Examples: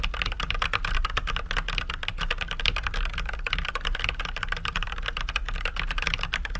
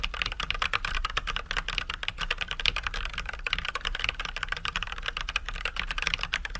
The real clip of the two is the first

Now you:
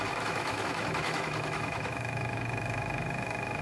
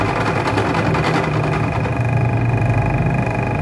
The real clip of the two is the second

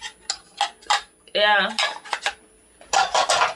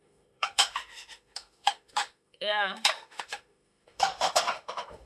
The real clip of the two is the first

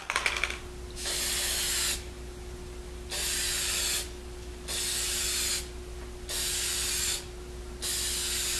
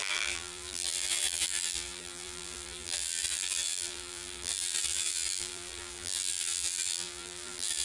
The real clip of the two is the first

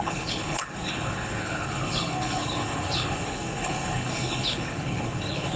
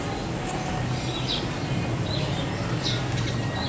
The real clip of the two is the second